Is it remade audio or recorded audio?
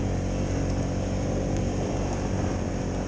recorded